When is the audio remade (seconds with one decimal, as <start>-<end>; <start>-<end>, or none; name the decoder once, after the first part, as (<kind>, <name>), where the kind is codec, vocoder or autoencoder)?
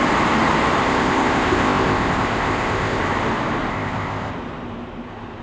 0.8-3.0 (codec, ZipCodec); 3.7-4.3